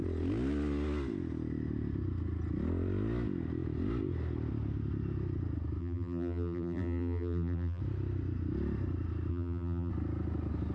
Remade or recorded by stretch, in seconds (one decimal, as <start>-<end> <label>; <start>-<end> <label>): 0.0-5.8 recorded; 5.8-7.8 remade; 7.8-9.3 recorded; 9.3-9.9 remade; 9.9-10.7 recorded